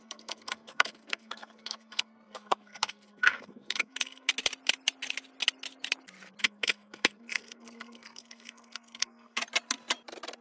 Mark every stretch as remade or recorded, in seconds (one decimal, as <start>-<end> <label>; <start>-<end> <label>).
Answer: 0.0-4.3 remade; 4.3-6.4 recorded; 6.4-9.4 remade; 9.4-10.4 recorded